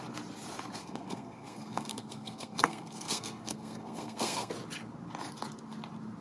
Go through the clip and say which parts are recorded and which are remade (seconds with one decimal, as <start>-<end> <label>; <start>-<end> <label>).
0.0-0.8 recorded; 0.8-4.5 remade; 4.5-6.2 recorded